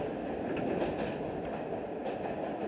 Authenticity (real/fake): real